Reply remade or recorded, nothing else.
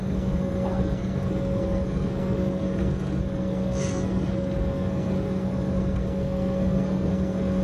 remade